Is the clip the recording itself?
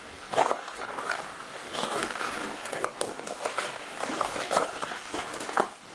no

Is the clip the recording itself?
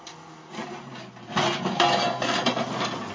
yes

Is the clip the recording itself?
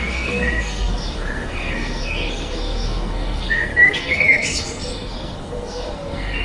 no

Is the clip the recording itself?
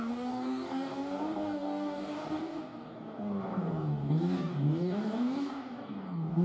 no